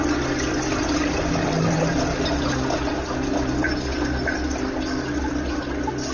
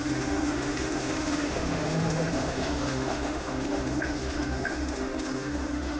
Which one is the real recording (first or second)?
first